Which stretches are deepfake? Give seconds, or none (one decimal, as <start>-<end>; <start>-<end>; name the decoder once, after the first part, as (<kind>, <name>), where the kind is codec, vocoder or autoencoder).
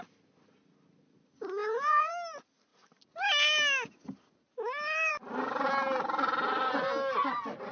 1.6-2.1 (vocoder, Vocos)